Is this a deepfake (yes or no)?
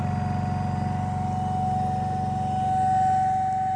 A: no